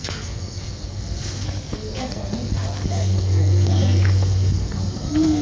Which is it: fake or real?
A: fake